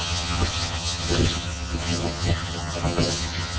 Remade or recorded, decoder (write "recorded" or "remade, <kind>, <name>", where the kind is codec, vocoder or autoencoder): remade, vocoder, HiFi-GAN